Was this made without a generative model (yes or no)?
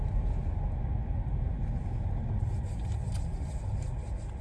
yes